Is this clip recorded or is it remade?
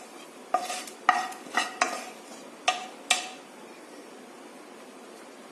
recorded